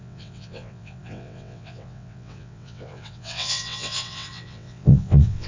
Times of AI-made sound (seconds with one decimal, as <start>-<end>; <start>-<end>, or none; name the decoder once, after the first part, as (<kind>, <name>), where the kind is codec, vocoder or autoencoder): 0.0-5.5 (vocoder, WaveNeXt)